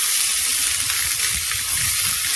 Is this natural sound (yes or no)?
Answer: yes